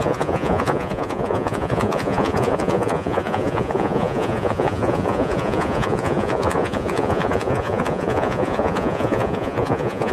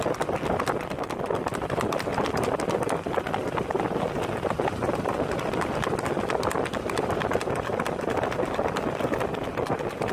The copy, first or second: first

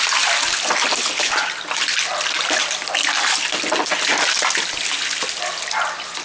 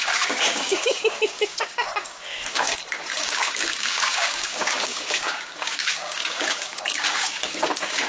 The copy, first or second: second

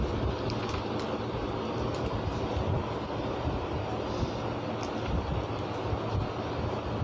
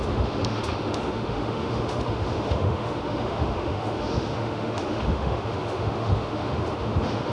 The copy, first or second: second